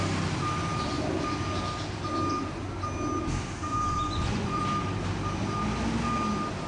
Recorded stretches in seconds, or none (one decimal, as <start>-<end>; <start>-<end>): 0.0-3.7; 4.6-6.7